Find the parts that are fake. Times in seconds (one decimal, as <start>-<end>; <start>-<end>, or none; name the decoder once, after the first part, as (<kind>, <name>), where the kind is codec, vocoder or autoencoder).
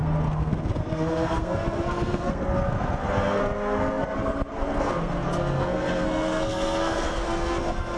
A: 0.0-8.0 (codec, SNAC)